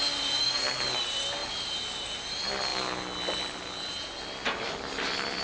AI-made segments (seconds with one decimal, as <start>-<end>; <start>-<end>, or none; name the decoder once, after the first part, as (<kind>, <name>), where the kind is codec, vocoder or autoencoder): none